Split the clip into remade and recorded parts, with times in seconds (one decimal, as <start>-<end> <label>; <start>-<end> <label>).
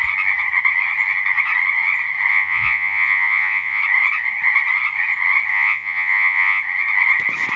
0.0-2.3 recorded; 2.3-3.8 remade; 3.8-5.5 recorded; 5.5-6.6 remade; 6.6-7.6 recorded